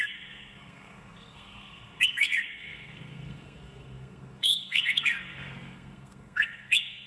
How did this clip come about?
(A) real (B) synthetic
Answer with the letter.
B